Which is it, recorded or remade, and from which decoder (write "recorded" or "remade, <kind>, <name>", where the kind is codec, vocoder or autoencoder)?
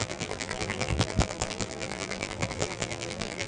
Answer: remade, vocoder, BigVGAN v2